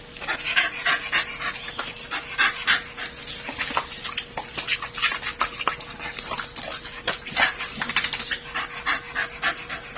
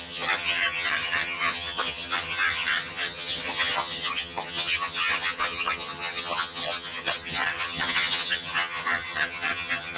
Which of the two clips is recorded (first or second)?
first